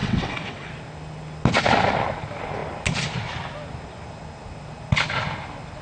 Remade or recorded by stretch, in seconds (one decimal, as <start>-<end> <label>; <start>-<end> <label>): 0.0-0.7 remade; 0.7-5.8 recorded